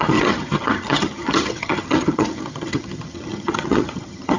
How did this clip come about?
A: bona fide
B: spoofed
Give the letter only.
B